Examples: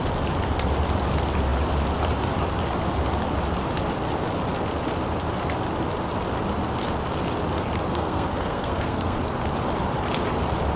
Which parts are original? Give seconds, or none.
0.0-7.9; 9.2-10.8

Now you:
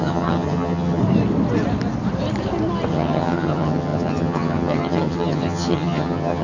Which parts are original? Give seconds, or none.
1.0-2.9

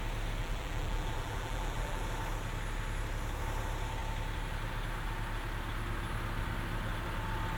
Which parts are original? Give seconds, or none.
0.0-0.4; 2.0-7.6

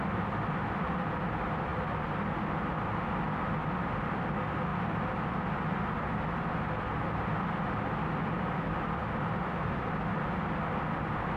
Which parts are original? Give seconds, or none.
0.0-11.4

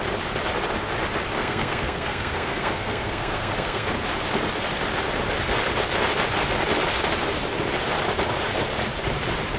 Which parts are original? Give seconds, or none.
0.0-1.4; 3.9-9.6